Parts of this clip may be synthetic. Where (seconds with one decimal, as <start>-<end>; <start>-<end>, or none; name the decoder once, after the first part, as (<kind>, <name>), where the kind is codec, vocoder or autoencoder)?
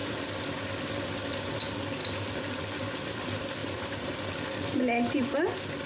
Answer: 0.0-0.6 (vocoder, BigVGAN v2); 2.0-2.6; 3.6-4.3